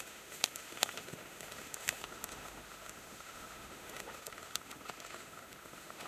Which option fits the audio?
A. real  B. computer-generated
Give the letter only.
B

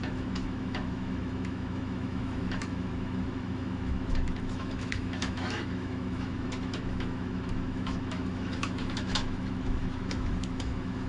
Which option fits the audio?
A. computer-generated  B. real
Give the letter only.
A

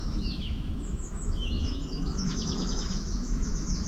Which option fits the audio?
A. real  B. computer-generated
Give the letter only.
B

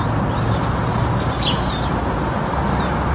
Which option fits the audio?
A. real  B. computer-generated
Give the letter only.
A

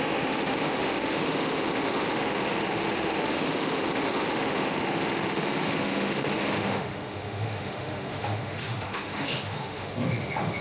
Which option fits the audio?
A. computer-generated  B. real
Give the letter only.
A